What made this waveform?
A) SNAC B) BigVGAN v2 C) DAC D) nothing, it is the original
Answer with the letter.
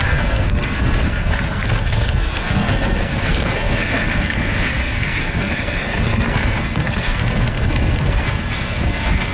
A